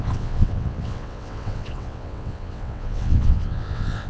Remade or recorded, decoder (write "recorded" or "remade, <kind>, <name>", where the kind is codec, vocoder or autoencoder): remade, vocoder, WaveNeXt